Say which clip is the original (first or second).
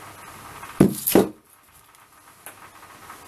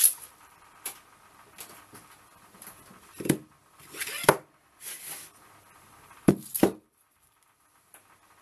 first